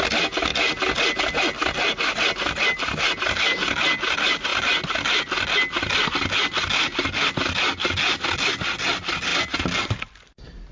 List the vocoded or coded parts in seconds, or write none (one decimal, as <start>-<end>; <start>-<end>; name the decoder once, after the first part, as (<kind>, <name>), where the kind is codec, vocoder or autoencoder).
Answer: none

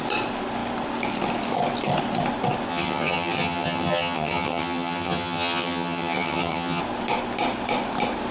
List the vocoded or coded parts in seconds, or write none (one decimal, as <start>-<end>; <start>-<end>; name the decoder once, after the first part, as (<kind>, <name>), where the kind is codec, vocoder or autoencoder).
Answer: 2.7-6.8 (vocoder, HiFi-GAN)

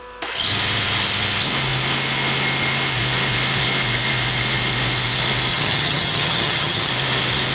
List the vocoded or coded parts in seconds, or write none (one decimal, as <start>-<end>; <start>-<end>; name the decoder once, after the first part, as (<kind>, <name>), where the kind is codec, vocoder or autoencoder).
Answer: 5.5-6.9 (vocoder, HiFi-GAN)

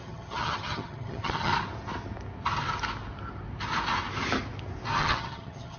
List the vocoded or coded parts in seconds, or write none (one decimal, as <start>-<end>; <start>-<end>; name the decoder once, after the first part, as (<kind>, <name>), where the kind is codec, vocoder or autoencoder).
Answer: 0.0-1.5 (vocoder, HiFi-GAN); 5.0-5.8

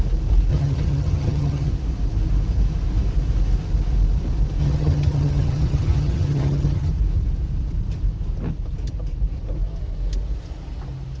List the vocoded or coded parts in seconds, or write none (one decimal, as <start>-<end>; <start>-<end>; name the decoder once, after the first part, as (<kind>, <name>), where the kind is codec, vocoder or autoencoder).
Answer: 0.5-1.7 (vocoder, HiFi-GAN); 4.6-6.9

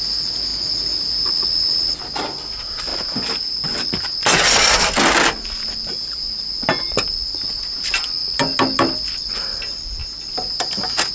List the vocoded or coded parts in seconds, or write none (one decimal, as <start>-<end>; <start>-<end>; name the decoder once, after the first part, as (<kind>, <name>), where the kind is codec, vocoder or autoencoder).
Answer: none